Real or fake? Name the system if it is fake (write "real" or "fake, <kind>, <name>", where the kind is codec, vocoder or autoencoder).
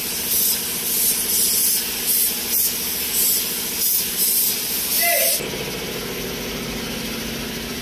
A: real